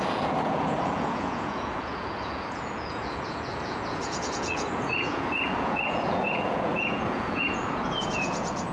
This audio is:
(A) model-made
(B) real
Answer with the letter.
A